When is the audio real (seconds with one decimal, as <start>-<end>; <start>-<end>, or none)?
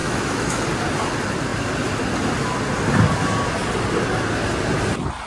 0.6-5.3